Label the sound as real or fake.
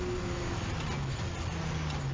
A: real